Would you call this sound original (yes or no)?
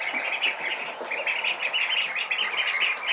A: yes